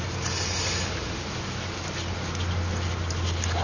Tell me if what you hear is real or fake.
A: real